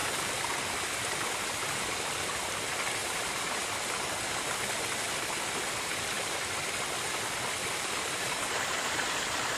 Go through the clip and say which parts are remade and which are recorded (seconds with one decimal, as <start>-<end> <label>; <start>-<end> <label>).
0.0-3.0 recorded; 3.0-3.5 remade; 3.5-7.6 recorded; 7.6-9.1 remade; 9.1-9.6 recorded